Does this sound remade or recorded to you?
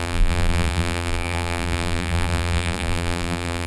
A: remade